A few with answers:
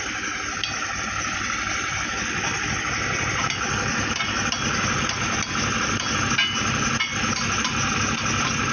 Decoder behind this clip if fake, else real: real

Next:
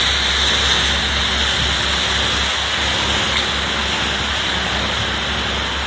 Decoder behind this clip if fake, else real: real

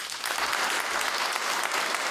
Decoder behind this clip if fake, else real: real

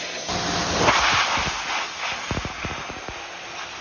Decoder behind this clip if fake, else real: real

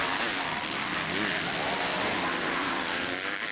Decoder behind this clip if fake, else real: real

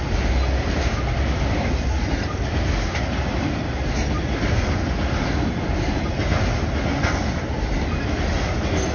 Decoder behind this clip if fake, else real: real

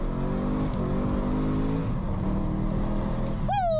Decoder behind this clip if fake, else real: real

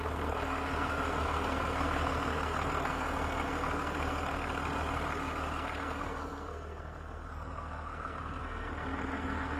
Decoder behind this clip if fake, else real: fake, codec, SNAC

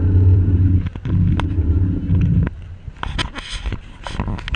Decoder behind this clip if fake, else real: real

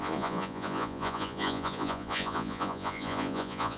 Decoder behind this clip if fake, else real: fake, vocoder, Vocos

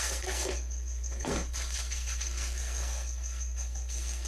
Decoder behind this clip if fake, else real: fake, codec, SNAC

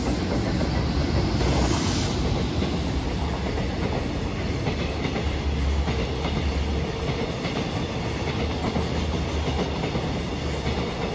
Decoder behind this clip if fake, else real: real